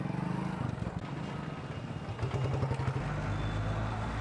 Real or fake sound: real